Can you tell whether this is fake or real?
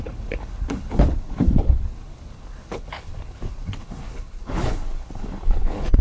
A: fake